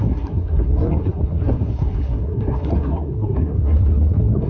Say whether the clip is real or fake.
fake